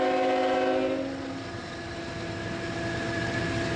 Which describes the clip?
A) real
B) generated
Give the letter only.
A